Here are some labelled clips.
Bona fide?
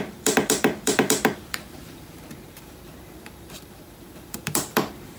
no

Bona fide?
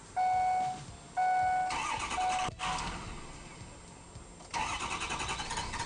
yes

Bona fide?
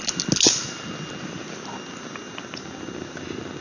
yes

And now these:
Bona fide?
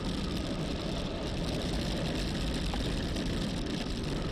no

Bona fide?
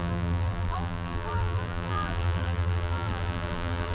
no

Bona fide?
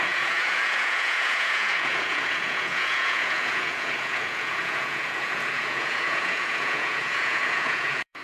no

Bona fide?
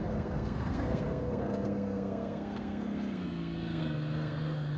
no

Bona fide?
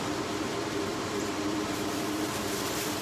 no